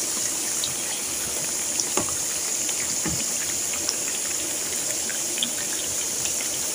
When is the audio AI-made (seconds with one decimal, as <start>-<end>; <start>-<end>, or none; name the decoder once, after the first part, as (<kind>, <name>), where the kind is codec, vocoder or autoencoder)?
5.1-6.7 (vocoder, BigVGAN v2)